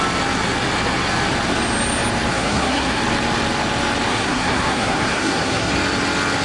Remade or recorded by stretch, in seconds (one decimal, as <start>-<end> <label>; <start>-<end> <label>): 0.0-2.3 recorded; 2.3-3.0 remade; 3.0-4.1 recorded; 4.1-5.7 remade; 5.7-6.4 recorded